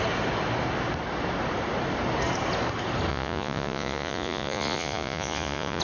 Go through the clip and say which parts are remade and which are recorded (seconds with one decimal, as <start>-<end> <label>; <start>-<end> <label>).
0.0-3.1 recorded; 3.1-5.8 remade